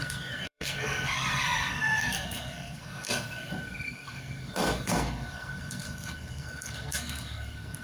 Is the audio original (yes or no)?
no